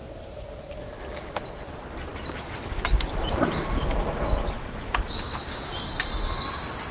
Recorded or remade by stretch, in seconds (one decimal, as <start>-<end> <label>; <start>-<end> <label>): 0.0-6.9 recorded